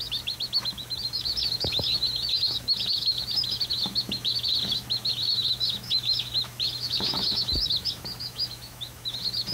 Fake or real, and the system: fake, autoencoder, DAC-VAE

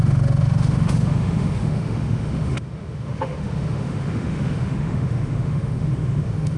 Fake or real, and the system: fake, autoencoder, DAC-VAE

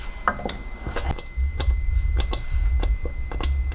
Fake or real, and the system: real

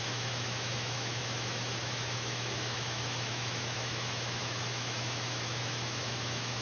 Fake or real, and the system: fake, autoencoder, DAC-VAE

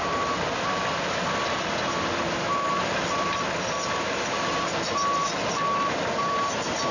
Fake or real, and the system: real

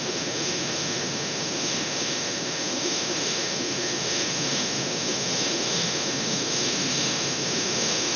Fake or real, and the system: fake, autoencoder, DAC-VAE